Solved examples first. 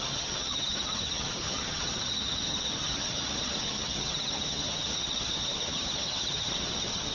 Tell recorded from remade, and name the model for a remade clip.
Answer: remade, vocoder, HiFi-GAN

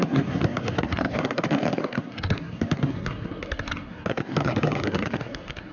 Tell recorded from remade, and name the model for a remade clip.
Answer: remade, codec, SNAC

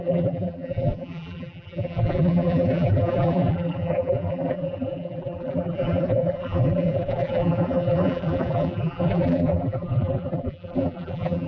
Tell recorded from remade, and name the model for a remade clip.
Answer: remade, vocoder, BigVGAN v2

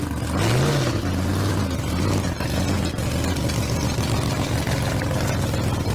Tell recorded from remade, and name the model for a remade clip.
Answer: recorded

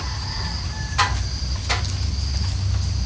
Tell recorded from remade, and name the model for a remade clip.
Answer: recorded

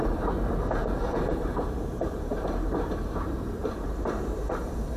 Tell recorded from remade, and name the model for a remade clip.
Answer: remade, vocoder, BigVGAN v2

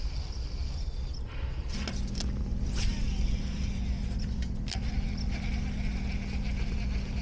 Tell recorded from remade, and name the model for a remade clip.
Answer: recorded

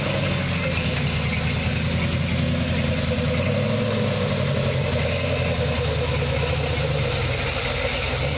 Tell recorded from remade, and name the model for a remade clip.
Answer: recorded